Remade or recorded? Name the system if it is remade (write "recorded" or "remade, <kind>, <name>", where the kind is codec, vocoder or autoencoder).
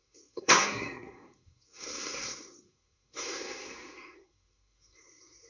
remade, codec, SNAC